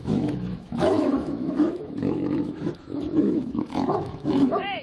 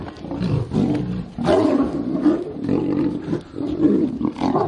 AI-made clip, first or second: first